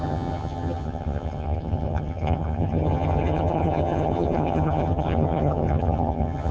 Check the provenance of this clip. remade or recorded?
remade